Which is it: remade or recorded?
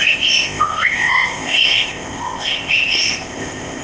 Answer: remade